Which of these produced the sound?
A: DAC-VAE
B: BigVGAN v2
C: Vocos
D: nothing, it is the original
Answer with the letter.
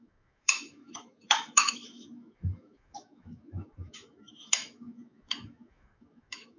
A